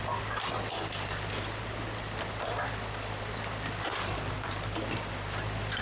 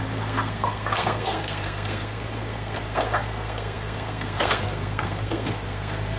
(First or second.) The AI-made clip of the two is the second